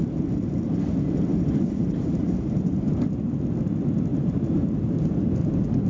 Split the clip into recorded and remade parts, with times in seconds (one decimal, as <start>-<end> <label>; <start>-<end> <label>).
0.0-1.3 recorded; 1.3-2.9 remade; 2.9-4.1 recorded; 4.1-5.1 remade; 5.1-5.9 recorded